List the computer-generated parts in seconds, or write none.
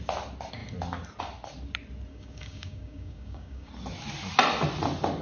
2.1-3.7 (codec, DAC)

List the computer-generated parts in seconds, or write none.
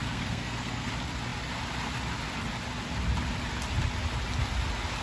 0.0-0.9 (codec, SNAC)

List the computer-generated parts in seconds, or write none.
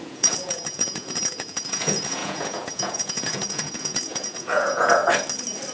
0.0-5.0 (vocoder, Vocos)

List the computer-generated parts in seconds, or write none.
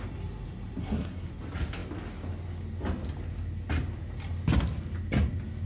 0.8-1.3 (codec, SNAC)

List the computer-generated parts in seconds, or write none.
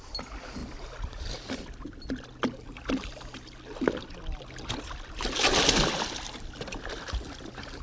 none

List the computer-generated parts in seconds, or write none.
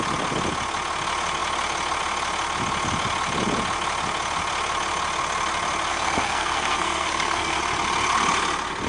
5.9-7.6 (codec, SNAC)